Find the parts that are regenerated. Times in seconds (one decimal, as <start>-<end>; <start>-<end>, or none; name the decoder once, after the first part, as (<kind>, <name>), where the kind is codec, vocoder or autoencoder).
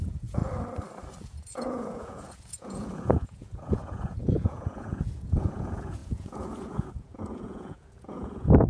0.0-0.4 (vocoder, Vocos); 1.2-8.7